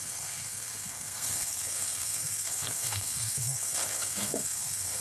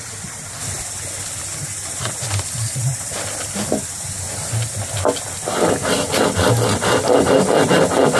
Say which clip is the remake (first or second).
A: first